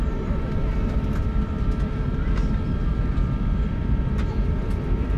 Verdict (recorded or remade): remade